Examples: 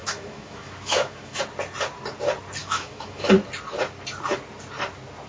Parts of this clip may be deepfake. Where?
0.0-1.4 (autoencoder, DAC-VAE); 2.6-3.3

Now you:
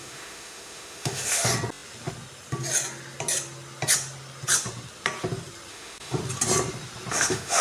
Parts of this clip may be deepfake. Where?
0.0-1.5 (autoencoder, DAC-VAE); 5.7-6.2; 7.1-7.6

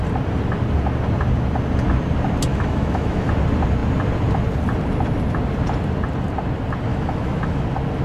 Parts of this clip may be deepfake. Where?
2.5-3.3 (autoencoder, DAC-VAE); 6.9-7.6

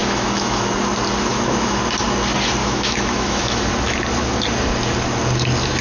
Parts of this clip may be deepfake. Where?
0.0-0.7 (autoencoder, DAC-VAE); 1.3-1.8; 2.6-3.6

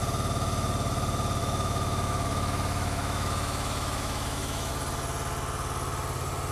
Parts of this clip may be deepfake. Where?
1.4-4.7 (autoencoder, DAC-VAE)

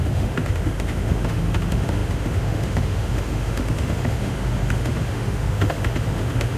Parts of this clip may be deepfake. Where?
0.0-6.6 (autoencoder, DAC-VAE)